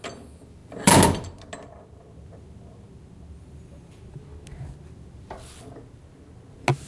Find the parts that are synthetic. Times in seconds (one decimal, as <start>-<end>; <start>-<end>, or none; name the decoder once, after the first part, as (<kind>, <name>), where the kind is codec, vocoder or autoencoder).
none

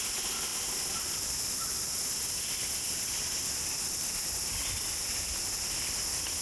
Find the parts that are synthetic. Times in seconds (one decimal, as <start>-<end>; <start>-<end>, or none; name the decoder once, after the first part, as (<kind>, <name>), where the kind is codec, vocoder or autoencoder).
none

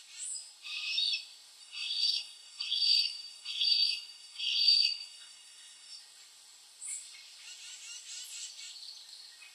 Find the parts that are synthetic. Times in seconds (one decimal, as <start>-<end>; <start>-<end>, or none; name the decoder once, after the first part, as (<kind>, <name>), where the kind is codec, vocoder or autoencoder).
1.6-6.0 (codec, SNAC)

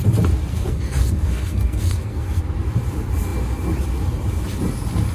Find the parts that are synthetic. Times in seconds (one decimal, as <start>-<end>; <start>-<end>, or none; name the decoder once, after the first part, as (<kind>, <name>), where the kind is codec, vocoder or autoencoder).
0.5-2.4 (codec, SNAC)

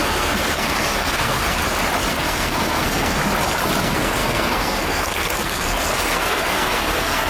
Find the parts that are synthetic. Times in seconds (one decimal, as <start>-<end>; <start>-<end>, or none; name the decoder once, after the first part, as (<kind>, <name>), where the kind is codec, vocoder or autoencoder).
0.0-1.6 (codec, SNAC); 2.1-3.2; 3.8-7.3